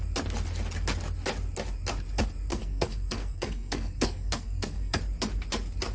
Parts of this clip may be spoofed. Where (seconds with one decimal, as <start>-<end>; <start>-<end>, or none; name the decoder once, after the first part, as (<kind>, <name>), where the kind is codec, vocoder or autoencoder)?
2.5-5.0 (codec, SNAC)

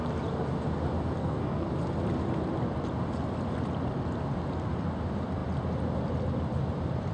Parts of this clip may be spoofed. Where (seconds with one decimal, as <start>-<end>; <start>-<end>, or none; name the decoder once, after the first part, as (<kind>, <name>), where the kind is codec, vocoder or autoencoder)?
1.2-1.7 (codec, SNAC)

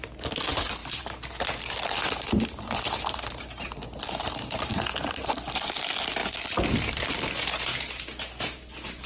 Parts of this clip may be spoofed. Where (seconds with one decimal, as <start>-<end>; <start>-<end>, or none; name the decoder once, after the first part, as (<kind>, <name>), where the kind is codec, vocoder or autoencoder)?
0.8-5.5 (vocoder, BigVGAN v2); 7.7-9.1

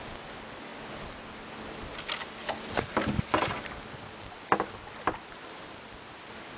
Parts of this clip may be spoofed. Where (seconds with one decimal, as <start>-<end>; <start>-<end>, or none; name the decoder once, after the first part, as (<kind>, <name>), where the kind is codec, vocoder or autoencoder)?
none

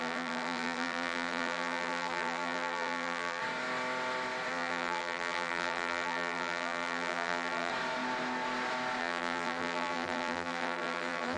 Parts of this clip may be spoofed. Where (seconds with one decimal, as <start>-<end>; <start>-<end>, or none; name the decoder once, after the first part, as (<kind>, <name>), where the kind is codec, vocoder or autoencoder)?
0.0-3.4 (vocoder, BigVGAN v2); 4.5-7.7; 9.0-11.4